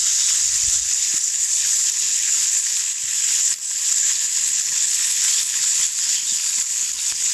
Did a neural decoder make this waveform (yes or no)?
yes